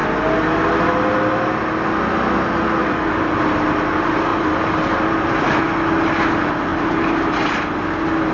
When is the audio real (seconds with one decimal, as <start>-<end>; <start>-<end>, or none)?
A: 0.0-4.3; 5.6-6.7; 7.7-8.3